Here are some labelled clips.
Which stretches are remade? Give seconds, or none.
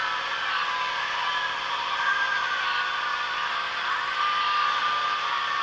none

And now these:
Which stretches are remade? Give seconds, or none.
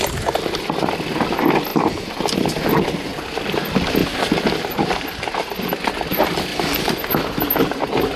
none